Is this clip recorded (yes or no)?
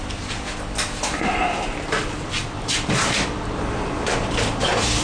no